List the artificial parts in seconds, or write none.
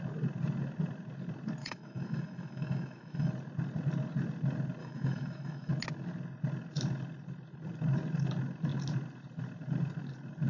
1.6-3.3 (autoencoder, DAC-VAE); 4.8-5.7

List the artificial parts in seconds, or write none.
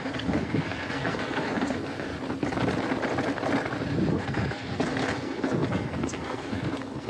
0.0-2.1 (codec, SNAC); 4.1-7.1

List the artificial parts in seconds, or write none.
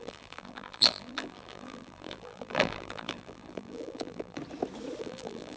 0.0-4.4 (vocoder, BigVGAN v2); 5.0-5.6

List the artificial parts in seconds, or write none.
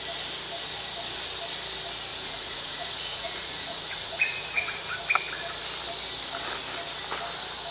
2.1-5.0 (vocoder, Vocos)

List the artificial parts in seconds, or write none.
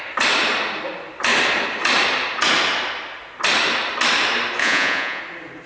4.6-5.2 (vocoder, Vocos)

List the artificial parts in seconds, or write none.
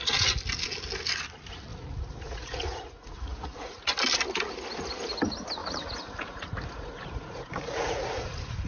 1.7-3.9 (vocoder, Vocos); 5.6-8.7